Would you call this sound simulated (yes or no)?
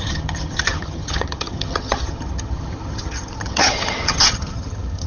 yes